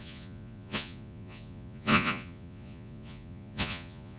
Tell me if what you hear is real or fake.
fake